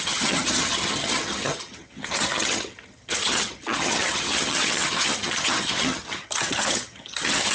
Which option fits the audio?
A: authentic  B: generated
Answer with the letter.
B